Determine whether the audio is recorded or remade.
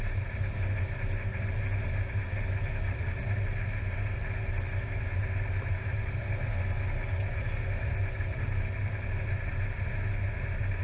recorded